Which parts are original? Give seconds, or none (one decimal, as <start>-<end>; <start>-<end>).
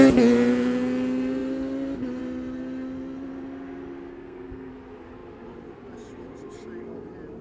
0.0-4.1; 4.7-7.4